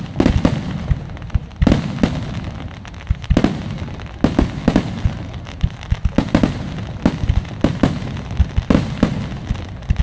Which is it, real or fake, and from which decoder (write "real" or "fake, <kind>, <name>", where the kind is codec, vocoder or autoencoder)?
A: real